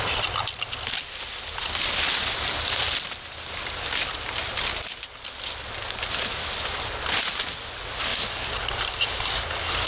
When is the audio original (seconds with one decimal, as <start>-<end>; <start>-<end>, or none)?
0.0-9.9